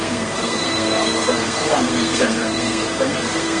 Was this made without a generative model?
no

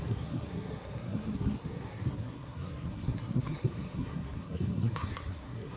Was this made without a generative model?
no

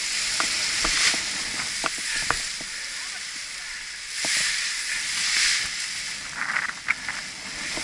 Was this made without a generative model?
yes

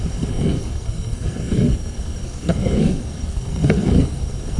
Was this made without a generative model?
no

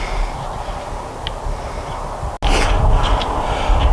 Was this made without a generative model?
yes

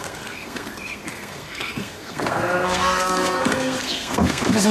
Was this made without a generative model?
no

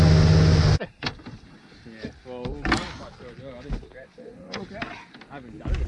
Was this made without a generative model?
yes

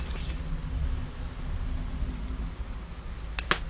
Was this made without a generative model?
yes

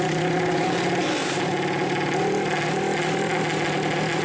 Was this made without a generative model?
yes